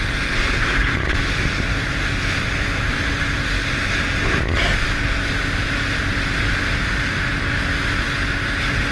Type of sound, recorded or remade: recorded